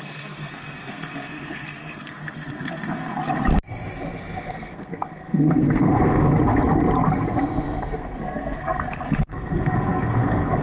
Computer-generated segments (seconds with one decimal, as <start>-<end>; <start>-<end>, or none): 0.0-3.2; 4.5-6.3; 7.4-10.6